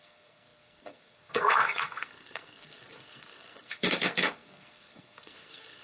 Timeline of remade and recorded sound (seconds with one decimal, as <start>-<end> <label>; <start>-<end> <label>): 0.0-5.8 remade